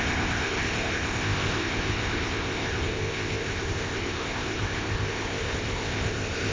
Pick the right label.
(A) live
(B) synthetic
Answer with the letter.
B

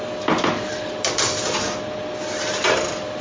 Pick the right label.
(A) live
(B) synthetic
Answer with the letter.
A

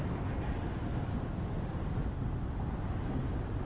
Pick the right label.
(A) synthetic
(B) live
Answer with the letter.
B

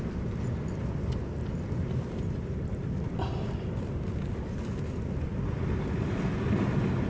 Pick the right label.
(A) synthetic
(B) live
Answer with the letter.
B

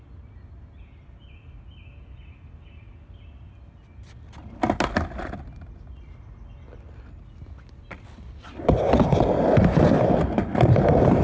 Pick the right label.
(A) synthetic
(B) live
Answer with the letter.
B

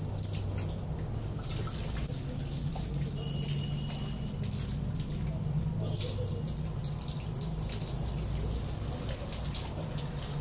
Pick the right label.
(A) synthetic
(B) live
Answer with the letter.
B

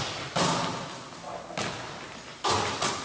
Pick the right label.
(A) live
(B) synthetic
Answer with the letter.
A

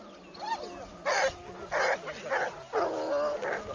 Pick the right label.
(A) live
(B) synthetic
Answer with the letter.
A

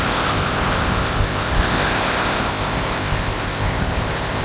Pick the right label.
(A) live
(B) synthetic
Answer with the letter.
B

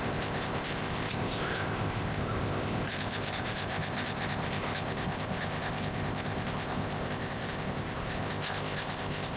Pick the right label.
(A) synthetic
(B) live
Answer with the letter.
A